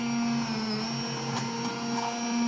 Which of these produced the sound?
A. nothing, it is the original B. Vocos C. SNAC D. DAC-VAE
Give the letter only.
A